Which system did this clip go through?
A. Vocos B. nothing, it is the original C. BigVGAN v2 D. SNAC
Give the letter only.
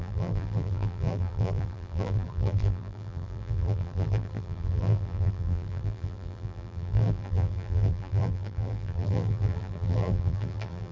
C